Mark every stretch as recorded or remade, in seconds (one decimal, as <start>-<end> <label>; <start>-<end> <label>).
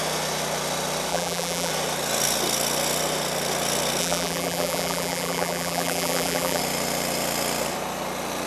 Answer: 0.0-1.1 recorded; 1.1-1.7 remade; 1.7-4.0 recorded; 4.0-6.6 remade; 6.6-8.5 recorded